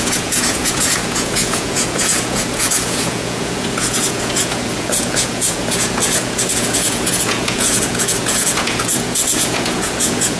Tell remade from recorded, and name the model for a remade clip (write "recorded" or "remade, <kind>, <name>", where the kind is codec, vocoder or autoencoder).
remade, vocoder, Vocos